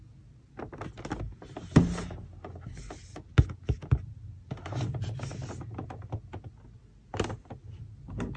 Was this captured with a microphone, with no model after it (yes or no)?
yes